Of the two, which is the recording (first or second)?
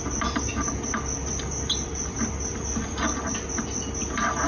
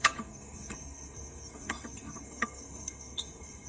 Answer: first